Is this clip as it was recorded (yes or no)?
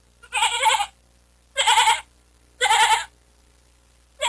yes